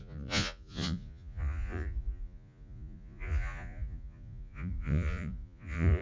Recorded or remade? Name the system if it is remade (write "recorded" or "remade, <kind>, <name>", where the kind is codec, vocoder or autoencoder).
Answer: remade, vocoder, Vocos